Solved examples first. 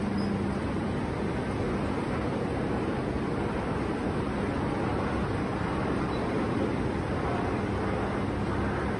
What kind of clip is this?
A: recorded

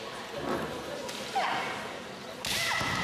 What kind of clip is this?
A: recorded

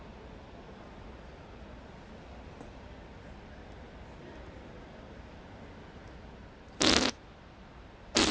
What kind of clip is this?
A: recorded